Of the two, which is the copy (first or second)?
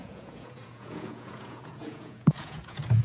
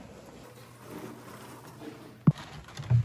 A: first